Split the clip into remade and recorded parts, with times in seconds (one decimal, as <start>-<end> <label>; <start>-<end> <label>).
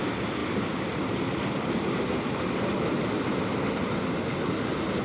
0.0-5.0 recorded